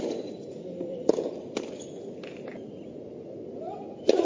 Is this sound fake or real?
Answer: real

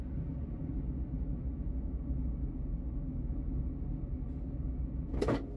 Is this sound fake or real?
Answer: real